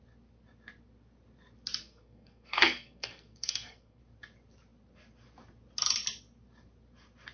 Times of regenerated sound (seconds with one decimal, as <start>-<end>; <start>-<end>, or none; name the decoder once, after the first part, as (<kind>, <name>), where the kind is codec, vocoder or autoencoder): 1.8-4.0 (codec, SNAC)